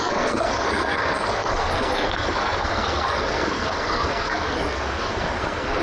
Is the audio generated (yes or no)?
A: yes